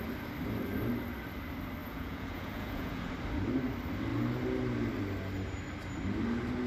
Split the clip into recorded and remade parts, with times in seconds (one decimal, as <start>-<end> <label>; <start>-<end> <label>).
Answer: 0.0-1.8 recorded; 1.8-3.1 remade; 3.1-6.7 recorded